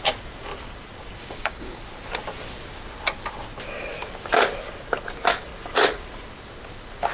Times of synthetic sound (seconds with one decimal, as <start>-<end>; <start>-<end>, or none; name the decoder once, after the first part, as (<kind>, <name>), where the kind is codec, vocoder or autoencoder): 1.2-1.8 (codec, DAC)